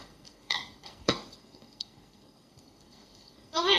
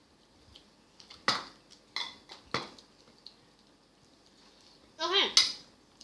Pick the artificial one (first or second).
first